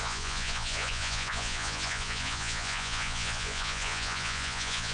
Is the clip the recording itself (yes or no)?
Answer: no